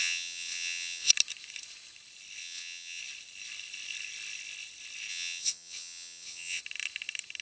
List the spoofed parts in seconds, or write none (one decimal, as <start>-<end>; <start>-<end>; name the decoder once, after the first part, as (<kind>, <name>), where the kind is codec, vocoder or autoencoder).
0.0-1.1 (vocoder, WaveNeXt); 2.4-3.0; 5.1-6.6